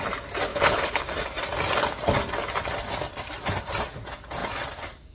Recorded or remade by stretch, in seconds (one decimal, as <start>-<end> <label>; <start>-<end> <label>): 0.0-0.5 recorded; 0.5-1.0 remade; 1.0-5.1 recorded